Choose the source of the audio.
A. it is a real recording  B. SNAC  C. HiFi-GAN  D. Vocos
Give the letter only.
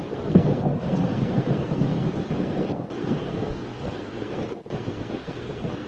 B